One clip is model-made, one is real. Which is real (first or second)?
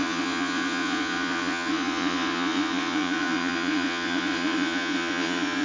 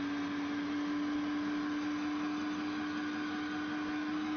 second